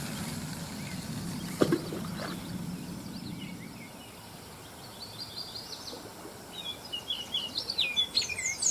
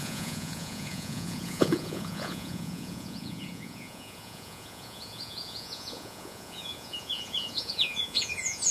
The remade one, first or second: second